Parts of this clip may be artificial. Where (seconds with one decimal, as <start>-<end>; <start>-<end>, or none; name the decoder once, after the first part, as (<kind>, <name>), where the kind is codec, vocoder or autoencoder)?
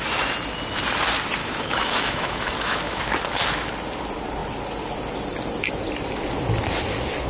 1.4-3.0 (autoencoder, DAC-VAE)